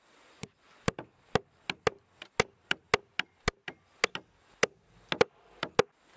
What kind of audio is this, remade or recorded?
recorded